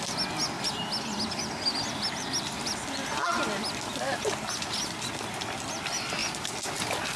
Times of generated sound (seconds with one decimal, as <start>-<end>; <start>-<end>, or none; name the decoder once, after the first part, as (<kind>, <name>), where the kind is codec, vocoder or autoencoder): none